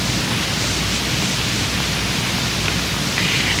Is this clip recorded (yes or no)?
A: yes